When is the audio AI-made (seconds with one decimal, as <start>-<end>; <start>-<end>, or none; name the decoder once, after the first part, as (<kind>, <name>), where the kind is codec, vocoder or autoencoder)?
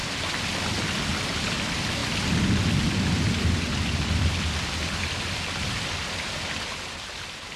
none